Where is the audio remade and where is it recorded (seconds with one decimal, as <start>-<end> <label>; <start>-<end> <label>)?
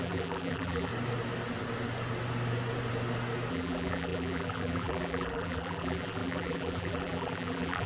0.0-0.9 remade; 0.9-3.5 recorded; 3.5-7.9 remade